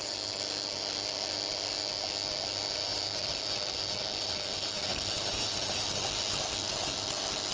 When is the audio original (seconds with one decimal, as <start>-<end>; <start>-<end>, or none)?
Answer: 0.0-2.9; 6.0-7.5